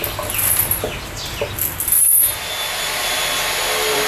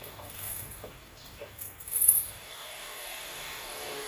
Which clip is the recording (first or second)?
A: first